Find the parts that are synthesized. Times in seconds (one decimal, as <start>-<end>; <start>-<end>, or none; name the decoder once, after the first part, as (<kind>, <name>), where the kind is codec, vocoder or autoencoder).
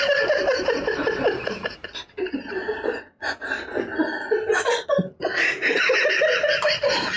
0.0-3.7 (vocoder, BigVGAN v2); 4.3-5.3; 6.1-7.2